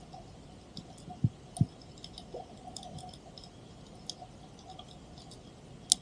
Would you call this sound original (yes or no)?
yes